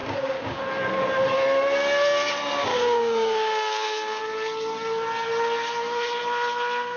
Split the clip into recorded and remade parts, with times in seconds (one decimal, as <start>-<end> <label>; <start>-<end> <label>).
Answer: 0.0-0.6 remade; 0.6-2.7 recorded; 2.7-4.2 remade; 4.2-7.0 recorded